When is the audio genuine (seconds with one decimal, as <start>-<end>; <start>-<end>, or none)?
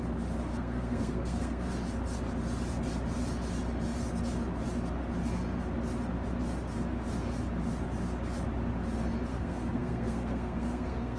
0.0-0.5; 1.7-9.3